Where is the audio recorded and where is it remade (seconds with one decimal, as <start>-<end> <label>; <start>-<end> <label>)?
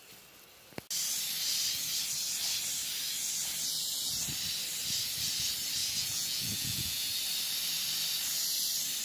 0.0-5.8 recorded; 5.8-7.2 remade; 7.2-9.0 recorded